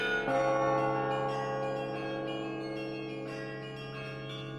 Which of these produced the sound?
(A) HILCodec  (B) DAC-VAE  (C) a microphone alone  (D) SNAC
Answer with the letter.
C